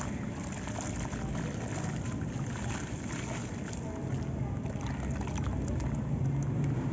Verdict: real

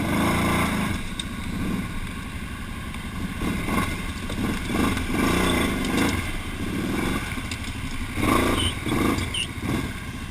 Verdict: real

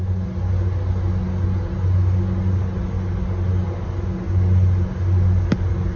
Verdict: real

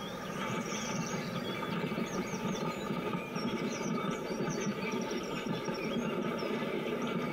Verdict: fake